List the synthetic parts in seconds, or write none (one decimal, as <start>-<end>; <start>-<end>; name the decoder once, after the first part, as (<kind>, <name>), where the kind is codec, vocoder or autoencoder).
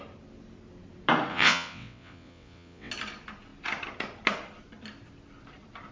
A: 1.3-2.9 (vocoder, WaveNeXt)